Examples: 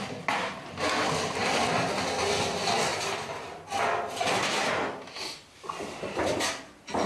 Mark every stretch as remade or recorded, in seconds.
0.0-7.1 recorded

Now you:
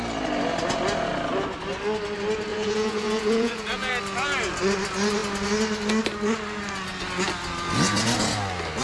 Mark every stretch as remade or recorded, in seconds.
0.0-2.5 recorded; 2.5-3.9 remade; 3.9-8.8 recorded

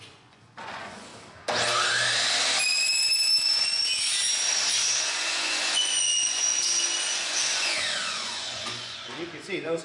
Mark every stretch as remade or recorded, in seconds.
0.0-1.1 remade; 1.1-5.0 recorded; 5.0-6.5 remade; 6.5-7.0 recorded; 7.0-9.8 remade

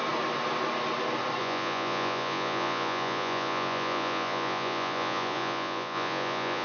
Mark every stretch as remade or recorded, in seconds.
0.0-1.4 recorded; 1.4-6.6 remade

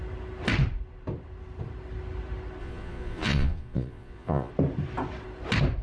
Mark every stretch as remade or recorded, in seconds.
0.0-2.6 recorded; 2.6-4.5 remade; 4.5-5.8 recorded